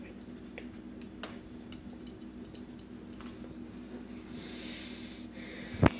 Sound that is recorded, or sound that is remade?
recorded